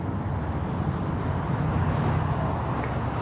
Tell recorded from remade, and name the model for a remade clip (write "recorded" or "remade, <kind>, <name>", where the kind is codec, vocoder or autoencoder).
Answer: recorded